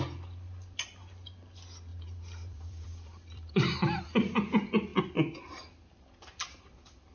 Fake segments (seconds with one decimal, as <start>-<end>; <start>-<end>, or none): 1.9-4.4